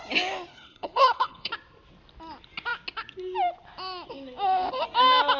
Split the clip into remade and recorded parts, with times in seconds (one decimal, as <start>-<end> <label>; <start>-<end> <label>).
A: 0.0-0.5 recorded; 0.5-1.5 remade; 1.5-5.4 recorded